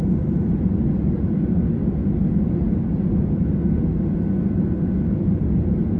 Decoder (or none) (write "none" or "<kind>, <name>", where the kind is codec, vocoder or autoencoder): none